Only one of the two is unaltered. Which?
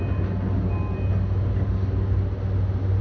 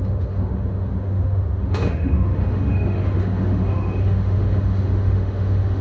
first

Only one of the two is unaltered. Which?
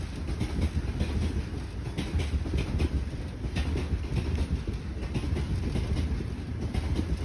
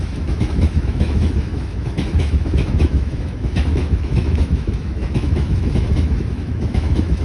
first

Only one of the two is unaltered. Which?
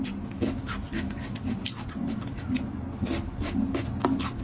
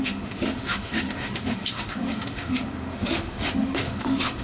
first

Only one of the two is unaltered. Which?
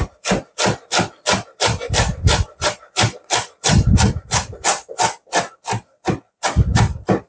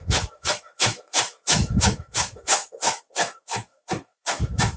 first